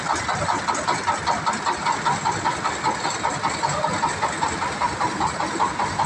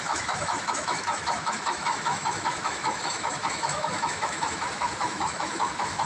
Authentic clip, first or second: first